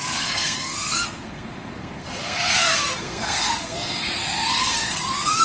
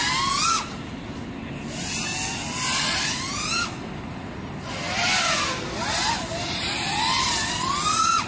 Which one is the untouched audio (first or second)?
second